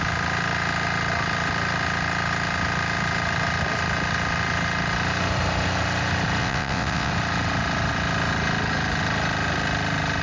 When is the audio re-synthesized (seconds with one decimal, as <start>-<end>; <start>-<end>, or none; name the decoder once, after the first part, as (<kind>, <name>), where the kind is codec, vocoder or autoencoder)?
6.4-7.1 (vocoder, WaveNeXt)